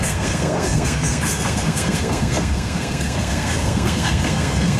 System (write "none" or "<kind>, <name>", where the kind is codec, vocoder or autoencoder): codec, SNAC